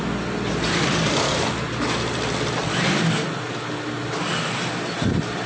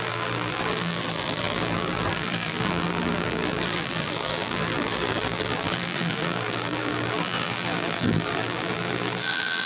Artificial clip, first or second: second